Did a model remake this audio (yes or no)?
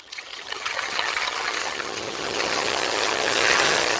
yes